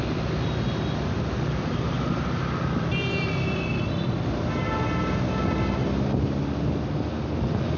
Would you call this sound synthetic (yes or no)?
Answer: no